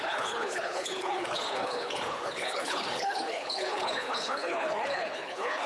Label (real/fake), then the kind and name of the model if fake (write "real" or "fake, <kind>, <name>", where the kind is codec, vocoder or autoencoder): fake, codec, HILCodec